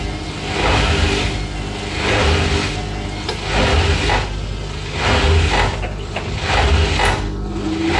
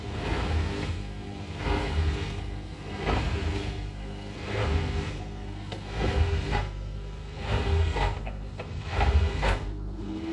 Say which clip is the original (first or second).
first